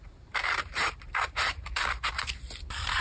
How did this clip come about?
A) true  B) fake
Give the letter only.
B